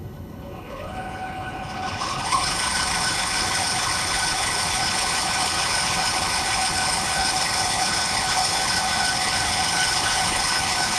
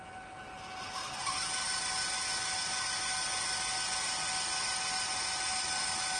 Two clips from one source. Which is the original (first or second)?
second